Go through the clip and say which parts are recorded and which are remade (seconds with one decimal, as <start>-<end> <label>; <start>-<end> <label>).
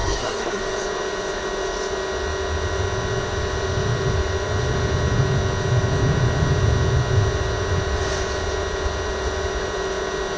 0.0-0.6 remade; 0.6-10.4 recorded